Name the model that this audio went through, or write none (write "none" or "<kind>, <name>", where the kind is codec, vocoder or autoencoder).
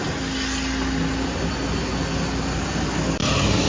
none